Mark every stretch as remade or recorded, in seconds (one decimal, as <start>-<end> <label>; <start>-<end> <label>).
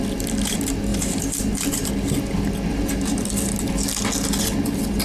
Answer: 0.0-0.9 recorded; 0.9-1.9 remade; 1.9-2.7 recorded; 2.7-3.2 remade; 3.2-5.0 recorded